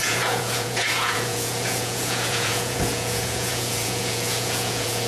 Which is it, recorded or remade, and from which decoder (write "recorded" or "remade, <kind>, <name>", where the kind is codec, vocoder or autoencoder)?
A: remade, vocoder, Vocos